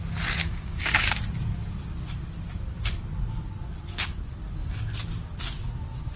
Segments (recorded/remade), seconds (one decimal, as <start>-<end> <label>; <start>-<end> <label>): 0.0-0.4 recorded; 0.4-1.2 remade; 1.2-6.2 recorded